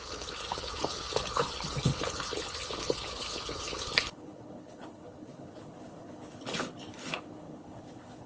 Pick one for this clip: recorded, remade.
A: remade